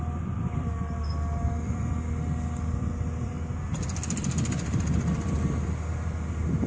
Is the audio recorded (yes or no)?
no